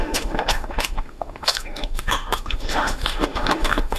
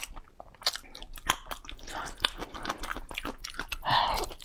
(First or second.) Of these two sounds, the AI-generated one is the first